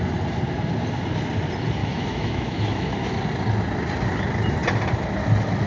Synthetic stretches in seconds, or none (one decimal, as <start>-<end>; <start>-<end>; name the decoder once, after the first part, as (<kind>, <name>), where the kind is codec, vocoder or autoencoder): 1.8-3.1 (autoencoder, DAC-VAE)